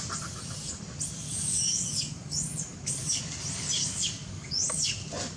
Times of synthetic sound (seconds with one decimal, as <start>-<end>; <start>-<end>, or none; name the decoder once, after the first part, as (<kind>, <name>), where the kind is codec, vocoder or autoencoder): 1.2-3.2 (codec, DAC); 3.8-4.9